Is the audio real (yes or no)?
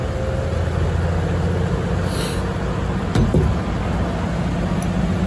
yes